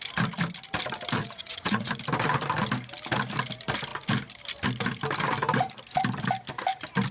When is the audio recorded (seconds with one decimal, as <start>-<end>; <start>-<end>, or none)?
0.0-1.2; 1.9-7.1